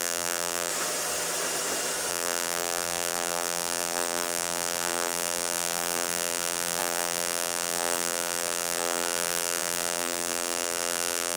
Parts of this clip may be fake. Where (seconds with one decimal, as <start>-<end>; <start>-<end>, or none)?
0.0-0.7; 2.1-11.4